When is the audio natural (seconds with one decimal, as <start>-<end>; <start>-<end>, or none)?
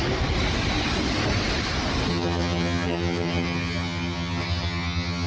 0.0-2.1